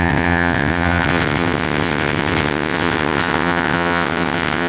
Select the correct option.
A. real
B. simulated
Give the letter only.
B